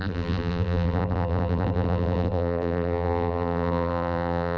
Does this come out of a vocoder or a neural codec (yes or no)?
yes